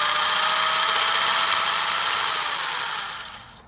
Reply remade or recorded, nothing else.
recorded